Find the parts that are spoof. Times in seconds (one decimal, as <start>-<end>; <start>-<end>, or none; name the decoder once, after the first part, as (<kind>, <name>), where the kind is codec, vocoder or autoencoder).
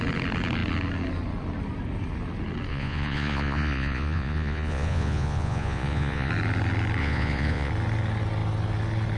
2.7-6.3 (vocoder, Vocos); 7.0-7.7